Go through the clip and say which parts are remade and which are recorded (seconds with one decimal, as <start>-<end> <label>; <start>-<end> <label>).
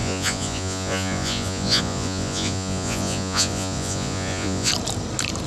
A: 0.0-4.7 remade; 4.7-5.5 recorded